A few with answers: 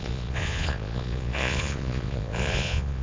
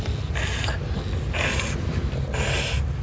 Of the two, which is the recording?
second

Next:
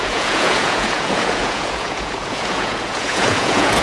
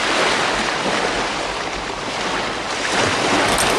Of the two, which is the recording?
second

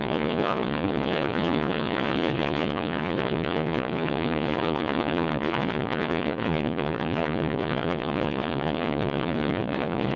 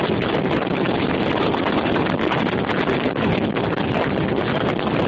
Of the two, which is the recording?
second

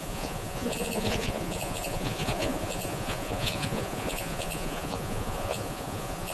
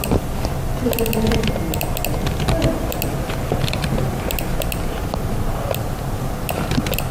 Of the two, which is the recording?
second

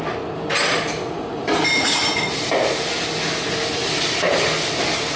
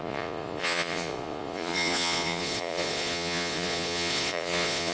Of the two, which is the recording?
first